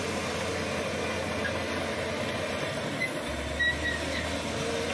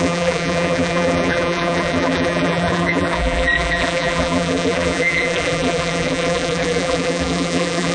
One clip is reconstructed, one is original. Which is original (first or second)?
first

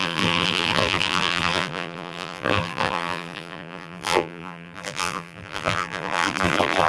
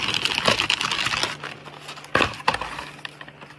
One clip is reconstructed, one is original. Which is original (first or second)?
second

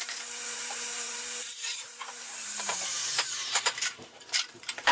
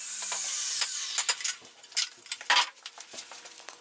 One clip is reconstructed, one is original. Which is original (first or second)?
second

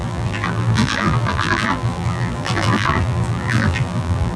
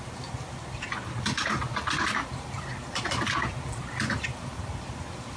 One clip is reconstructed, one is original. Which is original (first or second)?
second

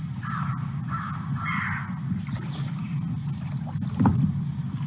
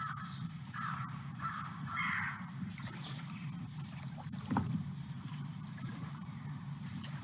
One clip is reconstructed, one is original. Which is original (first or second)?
first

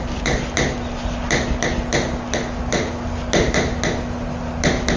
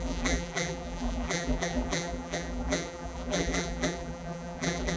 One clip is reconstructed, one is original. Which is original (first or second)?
first